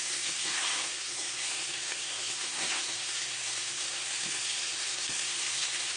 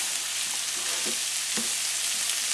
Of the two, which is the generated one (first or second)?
first